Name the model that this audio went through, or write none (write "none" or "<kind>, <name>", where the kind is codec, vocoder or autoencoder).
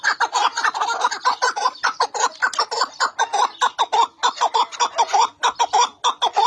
none